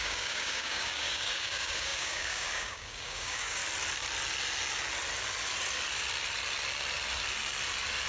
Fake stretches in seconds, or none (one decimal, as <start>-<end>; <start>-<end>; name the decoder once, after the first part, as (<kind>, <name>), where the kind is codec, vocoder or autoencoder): 0.0-3.6 (codec, DAC)